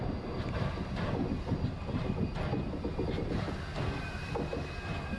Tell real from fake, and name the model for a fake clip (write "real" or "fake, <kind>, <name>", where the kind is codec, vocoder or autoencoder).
real